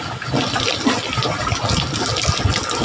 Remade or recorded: recorded